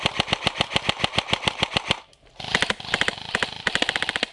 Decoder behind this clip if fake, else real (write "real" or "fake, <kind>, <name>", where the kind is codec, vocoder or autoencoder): real